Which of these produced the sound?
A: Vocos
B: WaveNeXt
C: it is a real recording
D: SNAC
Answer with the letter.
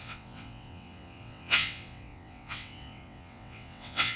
B